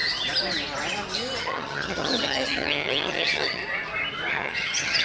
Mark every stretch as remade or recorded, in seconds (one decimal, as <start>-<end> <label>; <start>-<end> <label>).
0.0-1.4 recorded; 1.4-3.6 remade; 3.6-4.3 recorded; 4.3-5.0 remade